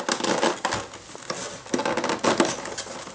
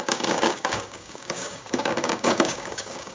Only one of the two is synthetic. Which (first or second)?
second